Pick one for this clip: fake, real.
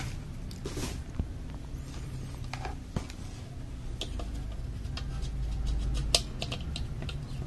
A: real